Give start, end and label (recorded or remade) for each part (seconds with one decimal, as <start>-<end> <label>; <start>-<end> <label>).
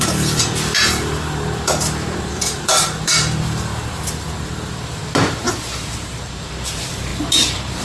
0.0-3.7 remade; 3.7-6.3 recorded; 6.3-7.8 remade